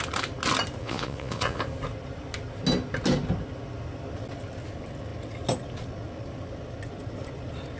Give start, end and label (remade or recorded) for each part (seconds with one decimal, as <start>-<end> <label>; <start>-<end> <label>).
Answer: 0.0-0.8 recorded; 0.8-1.6 remade; 1.6-7.8 recorded